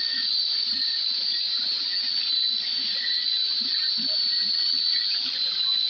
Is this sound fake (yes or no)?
no